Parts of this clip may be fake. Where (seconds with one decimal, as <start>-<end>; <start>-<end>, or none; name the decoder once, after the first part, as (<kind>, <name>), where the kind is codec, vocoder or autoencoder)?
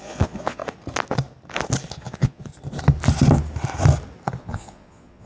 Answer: 0.0-0.6 (vocoder, Vocos); 2.0-2.5; 4.4-5.3